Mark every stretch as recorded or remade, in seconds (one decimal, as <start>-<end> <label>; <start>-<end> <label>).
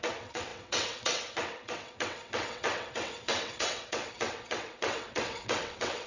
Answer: 0.0-6.1 remade